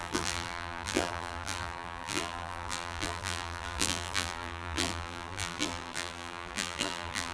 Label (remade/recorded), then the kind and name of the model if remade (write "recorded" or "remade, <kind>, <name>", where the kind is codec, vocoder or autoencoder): remade, vocoder, BigVGAN v2